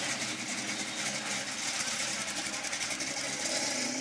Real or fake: real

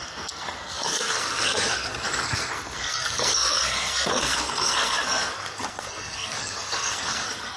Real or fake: fake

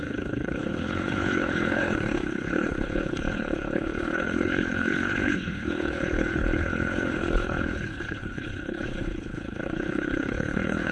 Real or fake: fake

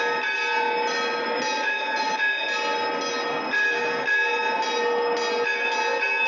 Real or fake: real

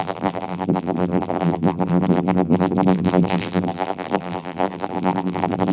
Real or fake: fake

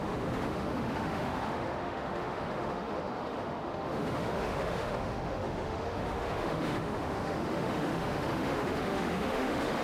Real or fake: fake